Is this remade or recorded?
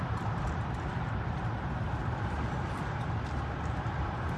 remade